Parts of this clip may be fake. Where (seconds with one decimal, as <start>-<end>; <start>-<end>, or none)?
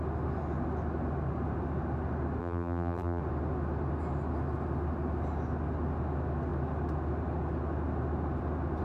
2.4-3.2